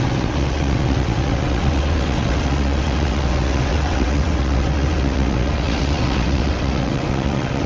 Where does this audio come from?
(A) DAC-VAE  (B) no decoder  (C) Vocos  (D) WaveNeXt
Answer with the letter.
D